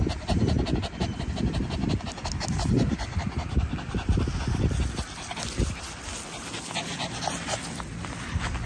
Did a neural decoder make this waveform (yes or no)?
no